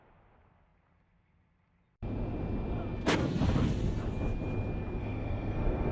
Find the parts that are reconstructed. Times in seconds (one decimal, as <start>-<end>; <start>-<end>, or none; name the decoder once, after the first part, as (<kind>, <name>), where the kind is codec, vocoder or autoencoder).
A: 5.0-5.9 (codec, SNAC)